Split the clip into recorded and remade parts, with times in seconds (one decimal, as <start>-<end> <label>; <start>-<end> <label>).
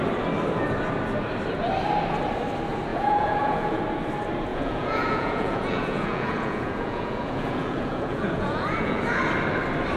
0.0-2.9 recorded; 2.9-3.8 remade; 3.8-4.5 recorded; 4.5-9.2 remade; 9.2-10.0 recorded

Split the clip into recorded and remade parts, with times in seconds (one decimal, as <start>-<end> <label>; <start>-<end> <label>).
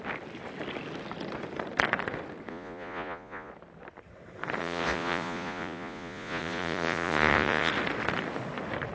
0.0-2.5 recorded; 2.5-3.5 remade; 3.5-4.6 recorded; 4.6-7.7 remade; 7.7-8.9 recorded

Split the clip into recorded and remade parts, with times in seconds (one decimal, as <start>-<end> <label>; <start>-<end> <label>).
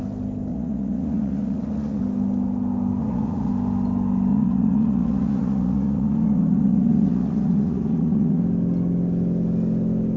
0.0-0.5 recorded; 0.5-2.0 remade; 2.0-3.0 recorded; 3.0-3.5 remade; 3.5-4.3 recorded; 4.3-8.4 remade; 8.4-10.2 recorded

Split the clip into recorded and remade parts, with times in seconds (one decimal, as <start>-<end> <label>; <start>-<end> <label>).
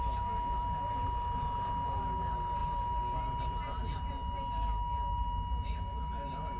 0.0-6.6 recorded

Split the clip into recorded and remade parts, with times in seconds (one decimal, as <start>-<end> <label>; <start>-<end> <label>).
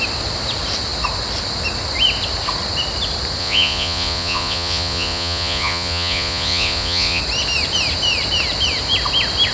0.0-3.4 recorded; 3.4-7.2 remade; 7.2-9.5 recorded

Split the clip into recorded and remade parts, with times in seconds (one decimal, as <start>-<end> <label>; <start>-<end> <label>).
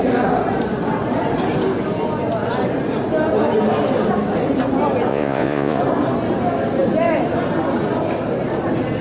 0.0-5.1 recorded; 5.1-5.8 remade; 5.8-9.0 recorded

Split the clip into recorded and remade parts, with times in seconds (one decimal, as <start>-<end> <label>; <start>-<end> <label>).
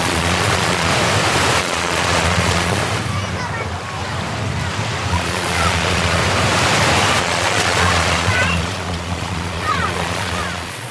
0.0-0.9 remade; 0.9-1.6 recorded; 1.6-2.8 remade; 2.8-5.1 recorded; 5.1-6.2 remade; 6.2-7.2 recorded; 7.2-10.9 remade